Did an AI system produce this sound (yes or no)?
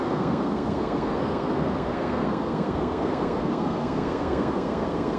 yes